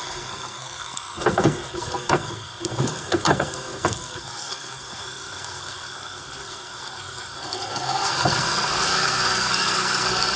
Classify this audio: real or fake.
fake